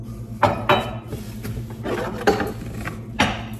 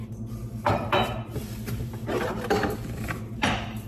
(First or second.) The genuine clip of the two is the first